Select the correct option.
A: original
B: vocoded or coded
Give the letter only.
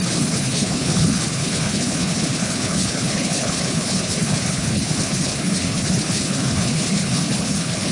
B